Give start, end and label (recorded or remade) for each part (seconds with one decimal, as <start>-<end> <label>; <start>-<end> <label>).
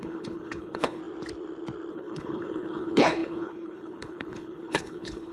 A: 0.0-1.0 remade; 1.0-1.9 recorded; 1.9-5.3 remade